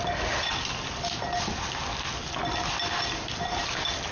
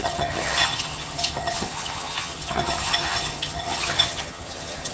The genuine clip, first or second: first